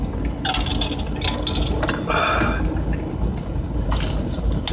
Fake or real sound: real